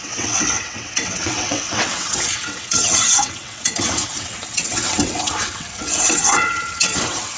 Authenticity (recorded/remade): remade